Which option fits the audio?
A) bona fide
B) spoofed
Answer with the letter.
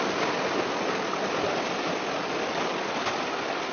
A